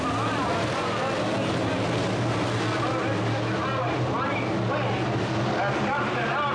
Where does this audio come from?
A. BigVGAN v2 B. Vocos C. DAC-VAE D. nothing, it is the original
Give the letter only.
D